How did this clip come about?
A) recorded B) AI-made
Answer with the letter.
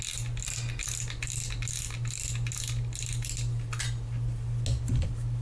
A